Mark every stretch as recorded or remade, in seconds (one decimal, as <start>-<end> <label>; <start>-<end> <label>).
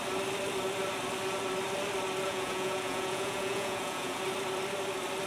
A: 0.0-2.3 recorded; 2.3-4.2 remade; 4.2-5.3 recorded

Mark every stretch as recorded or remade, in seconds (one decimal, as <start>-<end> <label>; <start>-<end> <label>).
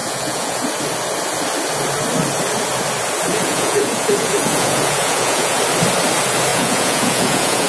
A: 0.0-0.7 remade; 0.7-3.3 recorded; 3.3-5.6 remade; 5.6-6.5 recorded; 6.5-7.7 remade